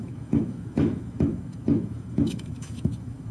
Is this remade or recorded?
remade